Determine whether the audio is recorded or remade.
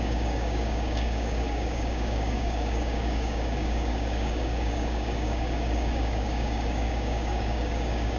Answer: remade